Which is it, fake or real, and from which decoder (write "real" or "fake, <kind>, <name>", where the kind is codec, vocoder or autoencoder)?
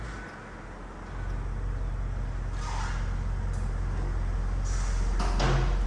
real